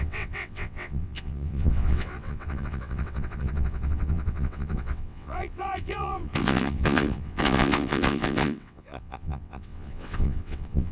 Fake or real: fake